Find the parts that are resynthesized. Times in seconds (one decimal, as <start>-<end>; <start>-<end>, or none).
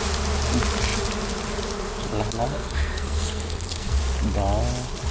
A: 2.5-4.0